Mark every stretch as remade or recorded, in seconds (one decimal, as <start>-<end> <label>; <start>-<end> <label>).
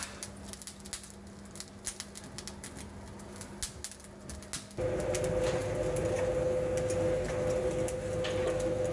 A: 0.0-8.9 recorded